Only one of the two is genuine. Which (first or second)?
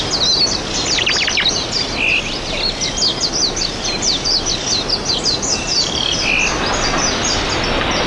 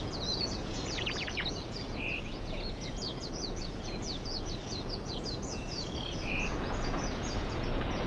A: first